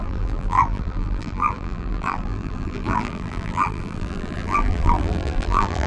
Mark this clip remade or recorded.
remade